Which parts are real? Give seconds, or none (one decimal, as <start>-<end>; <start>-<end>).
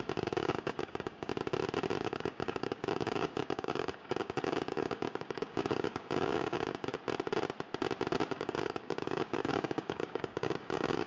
1.3-2.0; 6.9-8.3